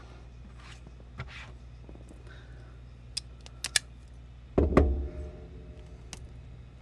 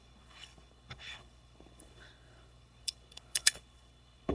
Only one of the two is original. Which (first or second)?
first